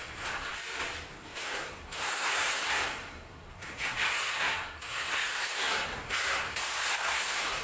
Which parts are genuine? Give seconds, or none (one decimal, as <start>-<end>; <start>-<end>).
0.5-1.2